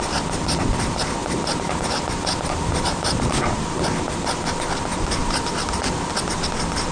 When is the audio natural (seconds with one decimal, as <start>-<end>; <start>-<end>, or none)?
0.0-1.2; 3.2-5.2; 6.1-6.9